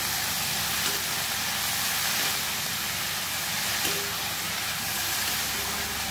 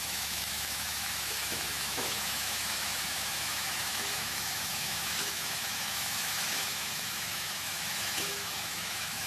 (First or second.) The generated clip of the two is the second